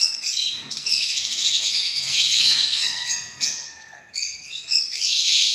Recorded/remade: remade